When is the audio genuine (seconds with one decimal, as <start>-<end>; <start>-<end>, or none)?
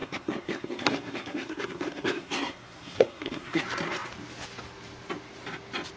3.6-6.0